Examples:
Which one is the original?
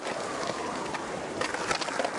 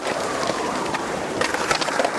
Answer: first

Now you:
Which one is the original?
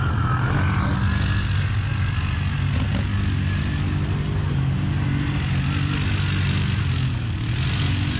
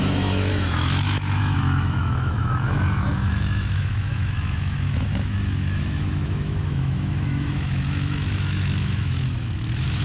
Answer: first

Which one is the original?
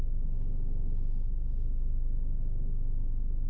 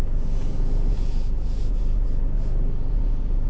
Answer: first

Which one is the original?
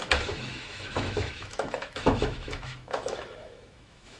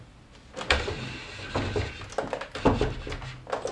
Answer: second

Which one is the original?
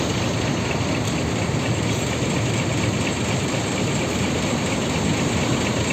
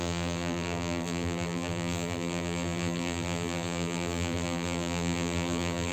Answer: first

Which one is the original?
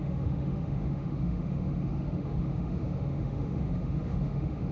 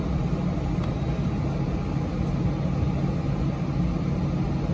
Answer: second